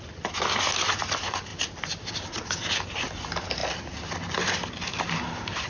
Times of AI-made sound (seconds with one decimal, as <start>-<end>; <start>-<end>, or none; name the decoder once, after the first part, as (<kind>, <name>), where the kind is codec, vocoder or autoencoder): none